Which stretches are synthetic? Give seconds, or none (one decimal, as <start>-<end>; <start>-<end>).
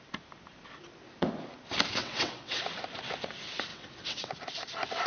2.0-2.6; 3.7-4.3